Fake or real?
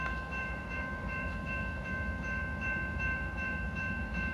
fake